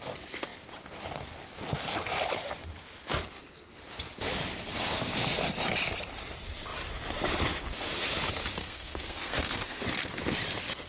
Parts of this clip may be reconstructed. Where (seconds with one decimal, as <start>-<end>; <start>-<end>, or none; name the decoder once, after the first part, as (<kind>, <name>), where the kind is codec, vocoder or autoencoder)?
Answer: 8.6-9.8 (codec, SNAC)